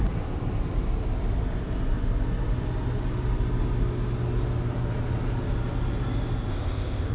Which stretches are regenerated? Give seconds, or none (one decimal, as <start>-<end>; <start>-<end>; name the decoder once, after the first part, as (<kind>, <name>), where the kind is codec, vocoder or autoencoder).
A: 6.5-7.1 (codec, ZipCodec)